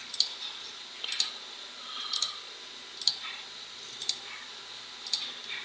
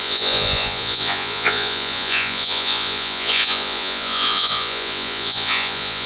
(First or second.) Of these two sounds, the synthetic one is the second